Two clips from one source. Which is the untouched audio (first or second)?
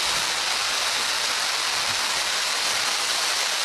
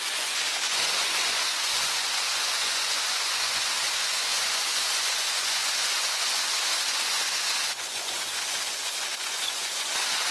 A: first